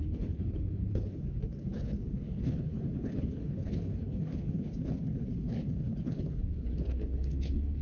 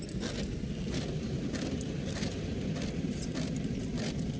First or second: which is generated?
first